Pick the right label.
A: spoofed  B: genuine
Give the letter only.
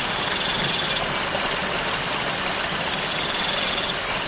B